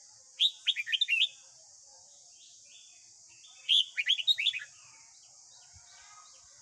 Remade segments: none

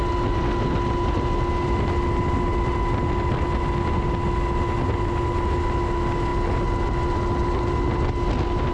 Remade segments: none